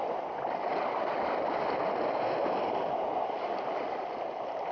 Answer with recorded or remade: recorded